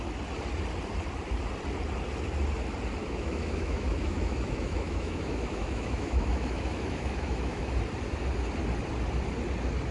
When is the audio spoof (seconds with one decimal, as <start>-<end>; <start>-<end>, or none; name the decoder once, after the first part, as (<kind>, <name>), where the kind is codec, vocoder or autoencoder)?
3.0-7.7 (autoencoder, DAC-VAE)